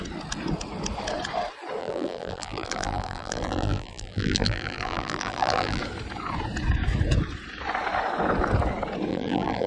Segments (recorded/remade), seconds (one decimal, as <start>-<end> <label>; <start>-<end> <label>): 0.0-1.8 recorded; 1.8-5.8 remade; 5.8-9.1 recorded; 9.1-9.7 remade